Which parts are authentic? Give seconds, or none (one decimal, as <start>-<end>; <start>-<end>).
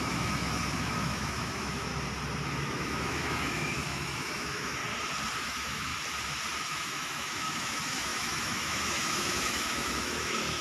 1.9-2.5; 4.8-5.4; 5.9-6.6